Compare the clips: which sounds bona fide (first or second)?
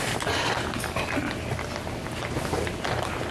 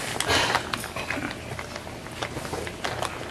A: second